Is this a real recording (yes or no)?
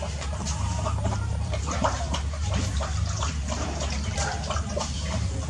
no